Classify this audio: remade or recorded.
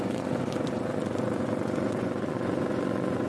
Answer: remade